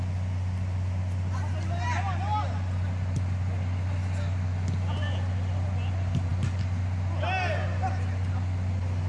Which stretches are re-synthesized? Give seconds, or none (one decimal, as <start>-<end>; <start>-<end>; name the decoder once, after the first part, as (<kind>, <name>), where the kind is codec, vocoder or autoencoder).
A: none